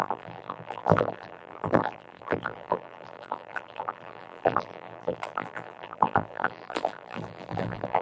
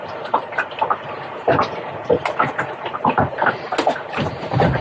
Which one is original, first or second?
second